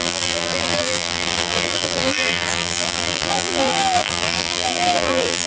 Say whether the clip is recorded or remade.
remade